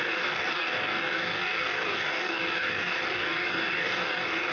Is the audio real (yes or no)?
no